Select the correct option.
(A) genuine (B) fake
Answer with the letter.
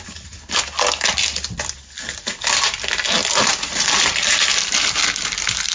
A